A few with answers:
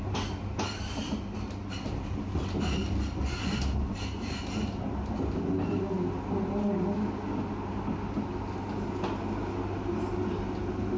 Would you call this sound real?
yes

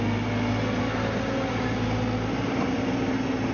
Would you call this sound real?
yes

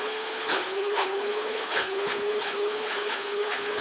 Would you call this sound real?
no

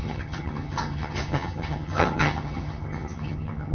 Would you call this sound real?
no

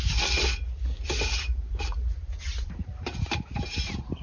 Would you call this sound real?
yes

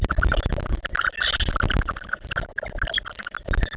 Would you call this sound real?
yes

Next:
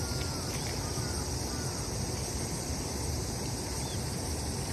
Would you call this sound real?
yes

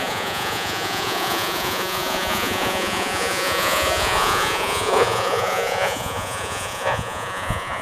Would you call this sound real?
no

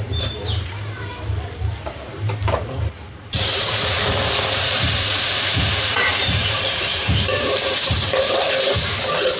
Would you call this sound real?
no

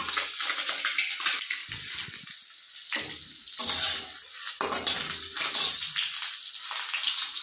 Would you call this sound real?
yes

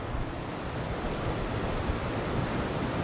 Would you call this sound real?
no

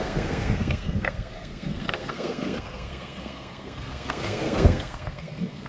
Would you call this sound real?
no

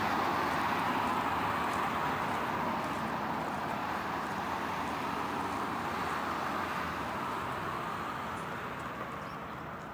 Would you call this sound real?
yes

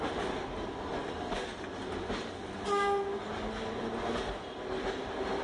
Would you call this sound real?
yes